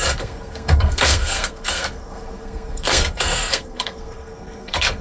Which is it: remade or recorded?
remade